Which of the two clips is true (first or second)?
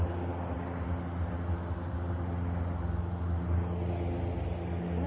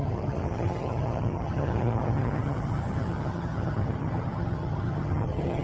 first